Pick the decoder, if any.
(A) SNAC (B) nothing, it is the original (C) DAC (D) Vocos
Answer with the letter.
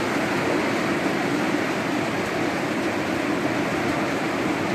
B